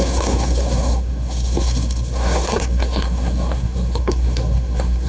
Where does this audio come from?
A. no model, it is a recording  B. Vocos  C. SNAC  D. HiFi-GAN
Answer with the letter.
C